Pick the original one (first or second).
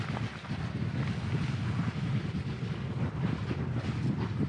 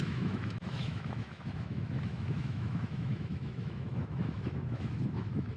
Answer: first